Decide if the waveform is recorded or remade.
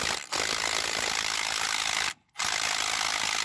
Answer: recorded